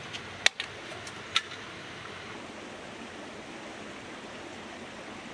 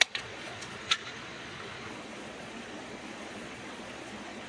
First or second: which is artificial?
second